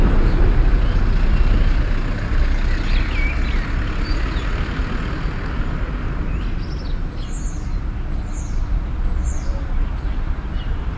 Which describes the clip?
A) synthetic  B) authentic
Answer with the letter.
B